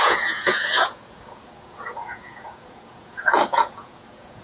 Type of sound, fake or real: fake